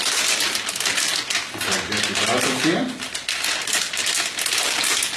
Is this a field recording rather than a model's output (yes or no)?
yes